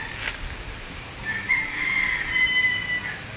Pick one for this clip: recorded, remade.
remade